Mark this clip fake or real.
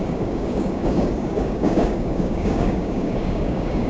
fake